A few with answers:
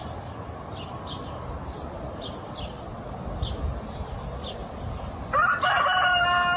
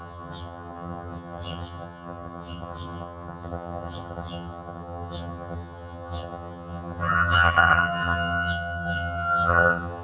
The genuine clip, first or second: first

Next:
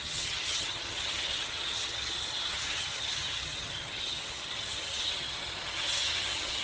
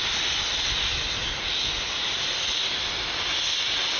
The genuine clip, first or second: second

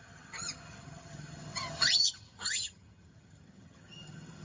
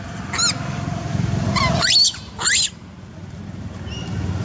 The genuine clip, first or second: second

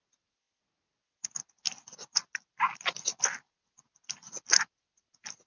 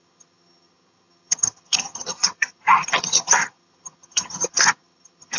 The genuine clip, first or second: first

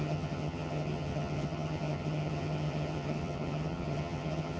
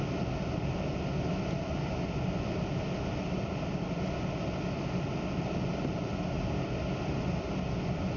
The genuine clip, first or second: second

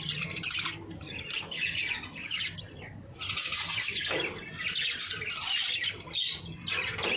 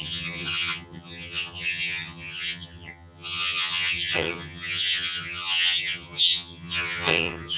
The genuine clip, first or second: first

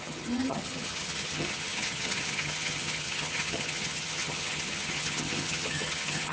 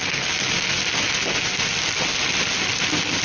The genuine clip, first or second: second